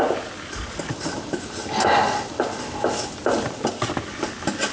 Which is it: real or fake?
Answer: real